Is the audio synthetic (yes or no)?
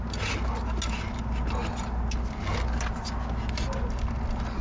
no